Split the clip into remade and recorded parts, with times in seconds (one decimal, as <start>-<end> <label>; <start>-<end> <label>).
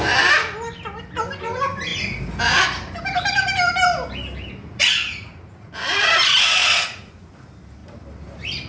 0.0-4.6 recorded; 4.6-5.7 remade; 5.7-6.6 recorded; 6.6-7.3 remade; 7.3-8.7 recorded